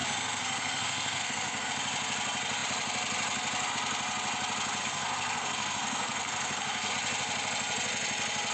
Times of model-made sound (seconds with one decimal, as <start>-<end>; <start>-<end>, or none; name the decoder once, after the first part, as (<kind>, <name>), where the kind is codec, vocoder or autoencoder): 0.0-1.7 (codec, SNAC); 4.8-6.9